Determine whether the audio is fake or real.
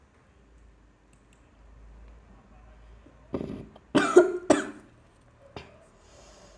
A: real